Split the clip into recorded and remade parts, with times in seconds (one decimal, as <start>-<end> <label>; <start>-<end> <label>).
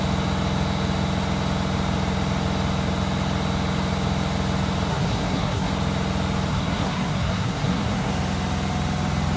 0.0-4.9 recorded; 4.9-5.7 remade; 5.7-6.5 recorded; 6.5-8.1 remade; 8.1-9.4 recorded